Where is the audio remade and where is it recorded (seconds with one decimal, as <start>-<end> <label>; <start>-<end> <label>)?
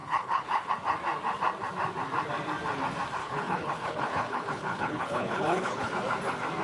0.0-0.7 remade; 0.7-3.2 recorded; 3.2-5.9 remade; 5.9-6.6 recorded